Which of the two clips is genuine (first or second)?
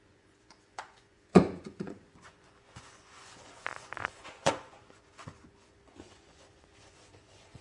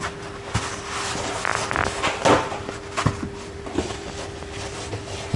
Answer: second